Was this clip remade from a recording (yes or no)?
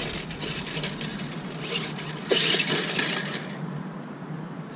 no